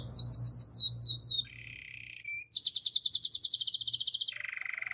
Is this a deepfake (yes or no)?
no